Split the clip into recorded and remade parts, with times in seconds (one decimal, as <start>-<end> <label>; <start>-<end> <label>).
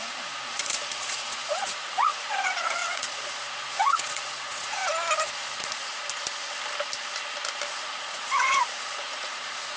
0.0-4.8 remade; 4.8-5.4 recorded; 5.4-5.9 remade; 5.9-7.7 recorded; 7.7-9.8 remade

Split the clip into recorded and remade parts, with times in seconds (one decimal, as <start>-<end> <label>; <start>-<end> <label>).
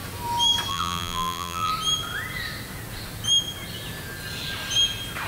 0.0-0.7 recorded; 0.7-1.7 remade; 1.7-5.3 recorded